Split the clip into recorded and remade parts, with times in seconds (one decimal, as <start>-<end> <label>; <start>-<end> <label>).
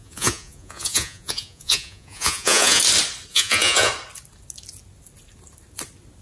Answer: 0.0-2.8 remade; 2.8-3.3 recorded; 3.3-3.9 remade; 3.9-6.2 recorded